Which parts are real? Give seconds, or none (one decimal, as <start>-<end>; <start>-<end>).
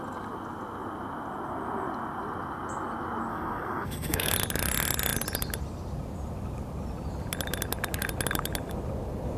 0.0-3.3; 4.3-9.4